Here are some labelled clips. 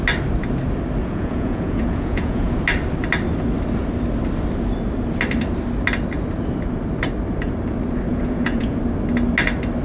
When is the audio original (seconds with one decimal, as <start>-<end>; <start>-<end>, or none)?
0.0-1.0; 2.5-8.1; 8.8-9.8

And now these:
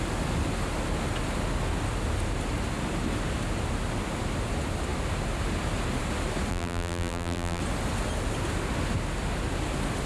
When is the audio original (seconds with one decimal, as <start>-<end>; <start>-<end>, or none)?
0.0-6.5; 7.6-10.1

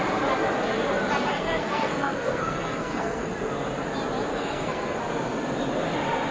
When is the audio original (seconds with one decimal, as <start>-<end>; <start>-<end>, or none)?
0.0-1.3; 3.3-4.3; 5.0-6.3

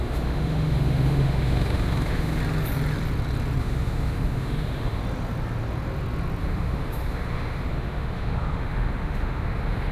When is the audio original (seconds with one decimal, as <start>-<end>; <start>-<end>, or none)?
2.4-3.6; 5.0-6.4

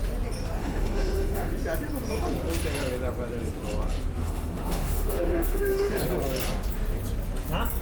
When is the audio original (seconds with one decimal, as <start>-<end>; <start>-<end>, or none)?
0.0-0.6; 1.5-4.2; 6.0-7.8

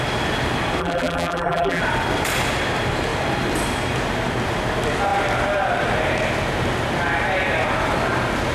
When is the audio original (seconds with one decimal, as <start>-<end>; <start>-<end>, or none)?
0.0-0.8; 1.8-8.5

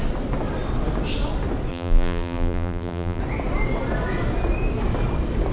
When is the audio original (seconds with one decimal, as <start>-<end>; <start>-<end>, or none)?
0.0-1.7; 3.2-5.5

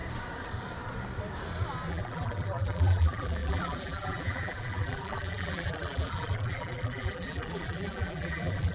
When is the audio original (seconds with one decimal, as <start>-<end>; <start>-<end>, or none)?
0.0-1.9